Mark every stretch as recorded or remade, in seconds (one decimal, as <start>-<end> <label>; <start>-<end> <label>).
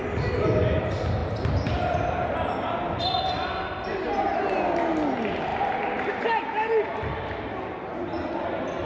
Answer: 0.0-8.9 recorded